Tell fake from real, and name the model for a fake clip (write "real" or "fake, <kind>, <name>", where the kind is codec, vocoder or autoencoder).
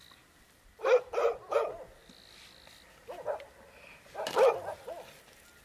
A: real